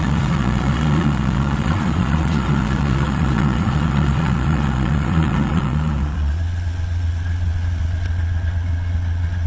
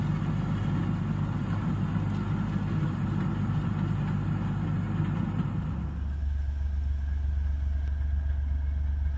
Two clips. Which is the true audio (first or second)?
second